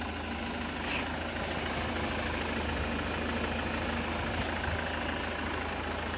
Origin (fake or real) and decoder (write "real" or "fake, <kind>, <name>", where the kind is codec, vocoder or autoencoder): real